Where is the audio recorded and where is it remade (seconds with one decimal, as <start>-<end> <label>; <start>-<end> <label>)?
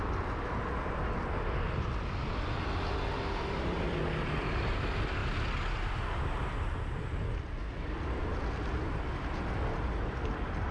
0.0-10.7 recorded